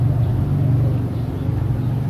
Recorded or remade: recorded